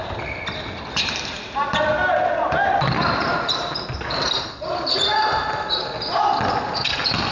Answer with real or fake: real